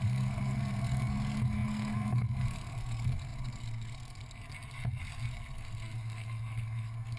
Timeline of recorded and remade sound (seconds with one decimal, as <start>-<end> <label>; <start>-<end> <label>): 0.0-7.2 remade